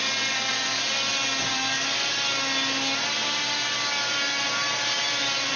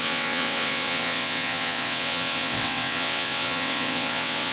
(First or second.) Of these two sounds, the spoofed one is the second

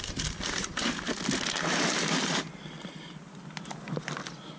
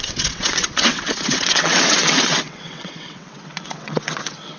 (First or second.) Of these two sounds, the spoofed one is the second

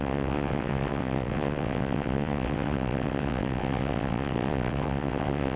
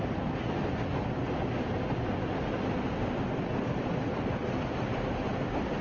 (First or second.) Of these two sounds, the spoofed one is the first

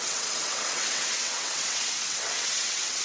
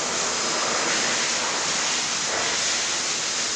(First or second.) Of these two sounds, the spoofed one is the first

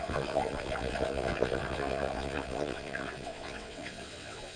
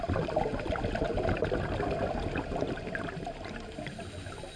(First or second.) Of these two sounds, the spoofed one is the first